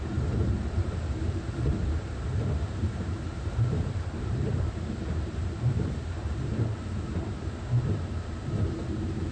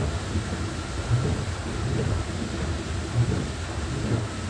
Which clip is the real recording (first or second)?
second